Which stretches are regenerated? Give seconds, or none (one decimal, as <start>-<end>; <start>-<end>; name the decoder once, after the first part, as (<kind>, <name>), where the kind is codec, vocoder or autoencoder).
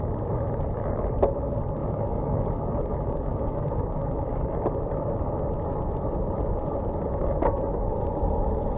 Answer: 1.8-4.4 (codec, DAC)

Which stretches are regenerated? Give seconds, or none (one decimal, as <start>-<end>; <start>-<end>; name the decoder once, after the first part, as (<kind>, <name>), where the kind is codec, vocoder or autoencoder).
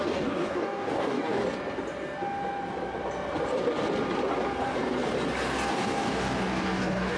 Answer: 0.0-1.4 (codec, DAC); 5.7-7.2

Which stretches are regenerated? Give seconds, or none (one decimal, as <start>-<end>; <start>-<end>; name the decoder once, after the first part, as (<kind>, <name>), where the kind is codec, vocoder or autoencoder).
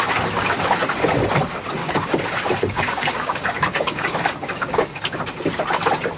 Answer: 1.8-5.2 (codec, DAC)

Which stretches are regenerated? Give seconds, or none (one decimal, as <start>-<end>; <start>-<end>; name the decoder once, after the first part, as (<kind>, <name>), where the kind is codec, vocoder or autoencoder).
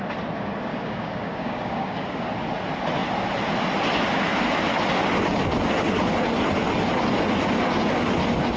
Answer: 0.7-2.3 (codec, DAC)